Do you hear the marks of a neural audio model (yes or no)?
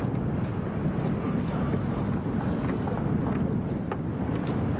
no